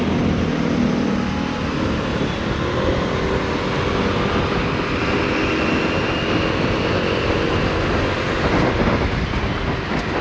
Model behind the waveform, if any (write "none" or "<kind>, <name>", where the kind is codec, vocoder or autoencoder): none